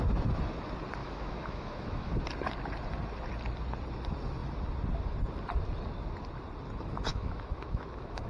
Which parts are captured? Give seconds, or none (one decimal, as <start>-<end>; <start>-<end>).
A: 0.0-1.0; 2.2-7.1